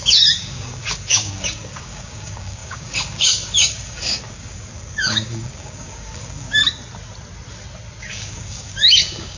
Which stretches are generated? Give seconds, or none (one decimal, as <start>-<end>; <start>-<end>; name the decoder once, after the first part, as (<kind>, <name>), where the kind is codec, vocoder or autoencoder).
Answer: 0.0-6.6 (codec, DAC); 8.0-9.4